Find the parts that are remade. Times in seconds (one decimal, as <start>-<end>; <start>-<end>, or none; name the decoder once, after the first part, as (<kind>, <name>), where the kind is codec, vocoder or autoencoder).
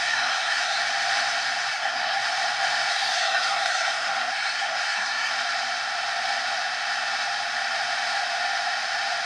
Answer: 0.0-0.8 (codec, SNAC); 1.7-2.2; 2.9-5.3